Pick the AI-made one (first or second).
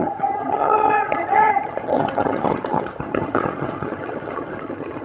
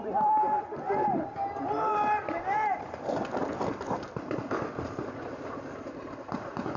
first